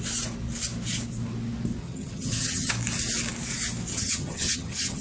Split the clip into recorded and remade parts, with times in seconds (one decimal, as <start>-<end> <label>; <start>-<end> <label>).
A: 0.0-1.8 recorded; 1.8-2.7 remade; 2.7-3.9 recorded; 3.9-5.0 remade